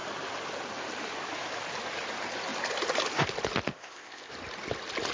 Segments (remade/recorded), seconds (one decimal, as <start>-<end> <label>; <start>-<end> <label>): 0.0-3.7 recorded; 3.7-4.3 remade; 4.3-5.1 recorded